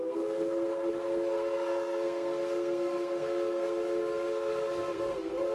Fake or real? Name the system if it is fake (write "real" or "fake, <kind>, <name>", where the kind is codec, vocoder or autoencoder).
fake, codec, SNAC